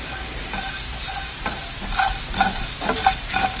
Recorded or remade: recorded